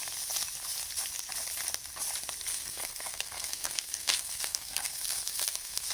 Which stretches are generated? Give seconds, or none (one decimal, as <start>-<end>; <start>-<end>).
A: 2.5-5.9